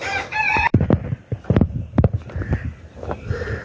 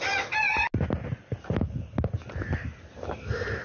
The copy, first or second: first